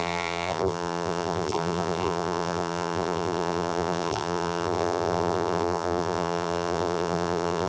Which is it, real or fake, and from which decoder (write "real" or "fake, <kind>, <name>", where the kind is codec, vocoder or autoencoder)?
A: fake, vocoder, BigVGAN v2